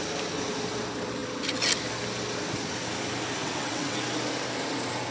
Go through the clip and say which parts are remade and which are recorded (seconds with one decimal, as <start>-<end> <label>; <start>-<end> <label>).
0.0-3.4 recorded; 3.4-4.0 remade; 4.0-5.1 recorded